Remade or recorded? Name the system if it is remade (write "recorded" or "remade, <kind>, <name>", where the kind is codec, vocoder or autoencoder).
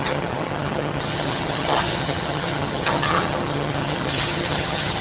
remade, vocoder, HiFi-GAN